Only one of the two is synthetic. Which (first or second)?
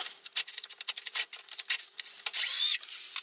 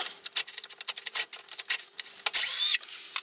first